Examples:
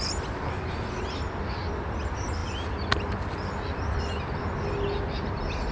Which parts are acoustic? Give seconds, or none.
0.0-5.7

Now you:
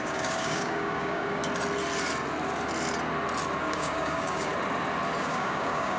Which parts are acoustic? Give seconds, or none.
1.4-3.6; 4.5-5.2

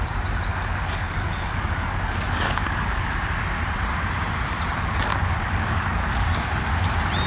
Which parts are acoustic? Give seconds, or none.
0.0-0.5; 3.1-5.1; 6.4-7.3

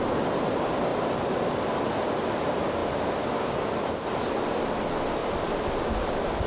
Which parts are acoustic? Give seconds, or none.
0.0-6.5

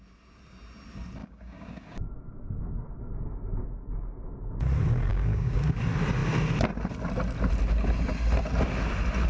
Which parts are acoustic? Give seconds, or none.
0.0-1.2; 3.0-5.1; 5.8-9.3

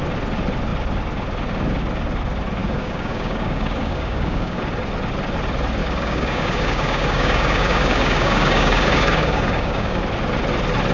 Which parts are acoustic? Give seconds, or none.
0.0-2.6; 4.6-5.8; 10.0-10.9